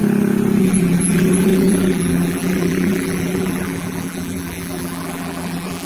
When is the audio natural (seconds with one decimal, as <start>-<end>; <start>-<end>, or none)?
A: 0.0-0.6